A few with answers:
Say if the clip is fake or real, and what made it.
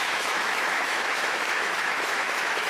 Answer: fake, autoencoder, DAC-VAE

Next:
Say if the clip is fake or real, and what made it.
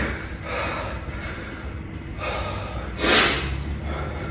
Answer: real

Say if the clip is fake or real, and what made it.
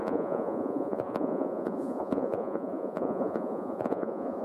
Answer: fake, vocoder, Vocos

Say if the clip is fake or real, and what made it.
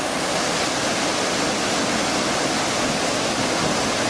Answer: real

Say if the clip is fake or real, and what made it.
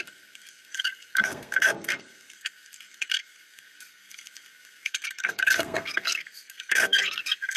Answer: fake, codec, SNAC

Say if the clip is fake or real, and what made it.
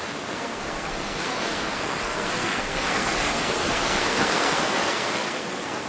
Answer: fake, codec, SNAC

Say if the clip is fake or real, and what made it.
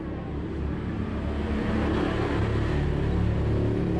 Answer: real